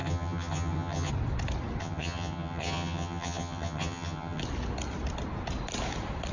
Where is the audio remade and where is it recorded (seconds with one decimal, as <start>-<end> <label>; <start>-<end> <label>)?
0.0-1.1 remade; 1.1-1.8 recorded; 1.8-4.4 remade; 4.4-6.3 recorded